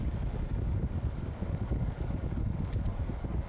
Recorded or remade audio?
remade